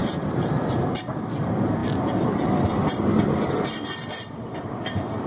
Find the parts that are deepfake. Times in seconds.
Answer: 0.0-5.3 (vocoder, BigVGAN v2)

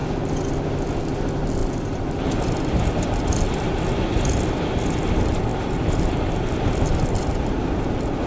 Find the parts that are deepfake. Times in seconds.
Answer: 0.0-0.5 (vocoder, BigVGAN v2); 1.6-2.2; 5.5-6.1

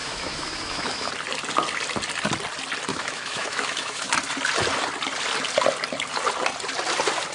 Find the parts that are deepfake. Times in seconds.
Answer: 0.0-1.1 (autoencoder, DAC-VAE); 2.9-4.1

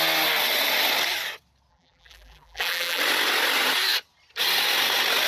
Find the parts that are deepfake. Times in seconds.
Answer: 1.7-3.0 (vocoder, BigVGAN v2)

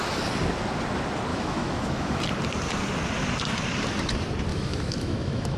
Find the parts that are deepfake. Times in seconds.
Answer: 1.3-2.2 (autoencoder, DAC-VAE); 4.5-5.6